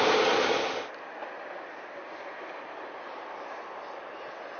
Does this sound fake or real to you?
real